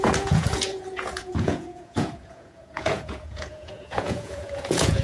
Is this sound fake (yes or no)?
yes